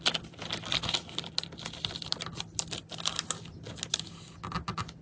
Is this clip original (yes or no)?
yes